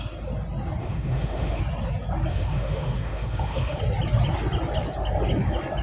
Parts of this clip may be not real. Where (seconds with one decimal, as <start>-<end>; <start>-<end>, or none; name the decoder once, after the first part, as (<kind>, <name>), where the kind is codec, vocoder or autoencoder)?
0.8-1.6 (autoencoder, DAC-VAE); 2.3-3.8